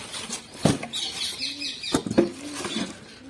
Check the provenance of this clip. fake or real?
real